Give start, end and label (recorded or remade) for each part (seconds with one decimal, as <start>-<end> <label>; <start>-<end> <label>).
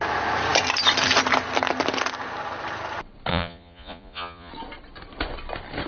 0.0-3.3 recorded; 3.3-4.5 remade; 4.5-5.9 recorded